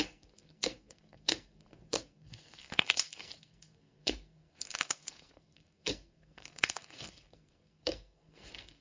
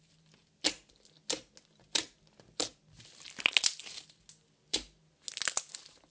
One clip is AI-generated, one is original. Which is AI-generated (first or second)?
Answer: first